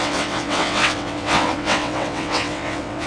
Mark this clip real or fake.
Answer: fake